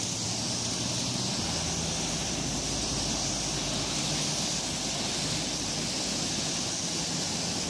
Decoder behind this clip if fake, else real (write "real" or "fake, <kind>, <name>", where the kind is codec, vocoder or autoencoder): real